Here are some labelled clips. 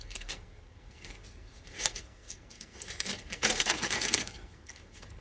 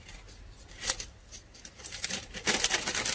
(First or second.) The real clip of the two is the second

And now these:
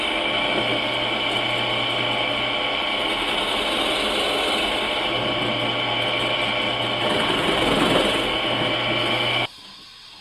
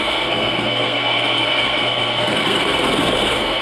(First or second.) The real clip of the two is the first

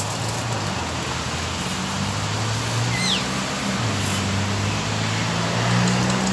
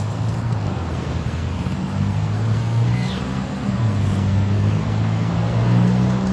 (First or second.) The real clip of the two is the first